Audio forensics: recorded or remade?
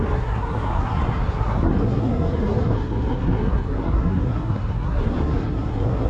remade